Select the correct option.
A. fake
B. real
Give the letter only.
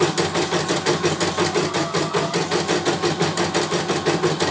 B